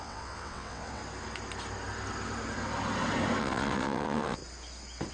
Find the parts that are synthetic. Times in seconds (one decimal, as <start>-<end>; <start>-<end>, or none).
0.0-1.0; 3.4-4.4

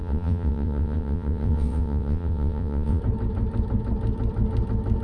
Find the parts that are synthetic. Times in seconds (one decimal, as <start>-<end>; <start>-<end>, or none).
0.0-3.0